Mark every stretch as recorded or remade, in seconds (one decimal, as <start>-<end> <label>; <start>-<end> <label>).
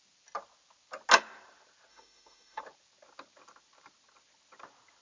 0.0-1.9 recorded; 1.9-2.6 remade; 2.6-5.0 recorded